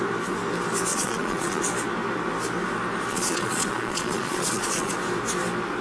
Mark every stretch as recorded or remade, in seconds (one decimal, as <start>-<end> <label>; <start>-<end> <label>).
0.0-0.9 recorded; 0.9-1.6 remade; 1.6-3.1 recorded; 3.1-4.9 remade; 4.9-5.8 recorded